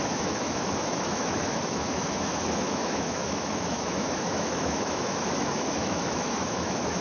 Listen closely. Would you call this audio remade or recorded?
remade